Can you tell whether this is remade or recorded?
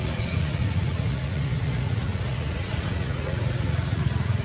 remade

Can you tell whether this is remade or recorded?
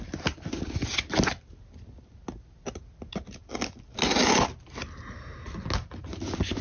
recorded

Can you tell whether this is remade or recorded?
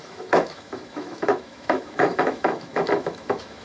remade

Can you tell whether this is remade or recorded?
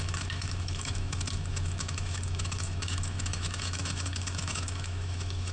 remade